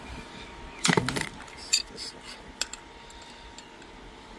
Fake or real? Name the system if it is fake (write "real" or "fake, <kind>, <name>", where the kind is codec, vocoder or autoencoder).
real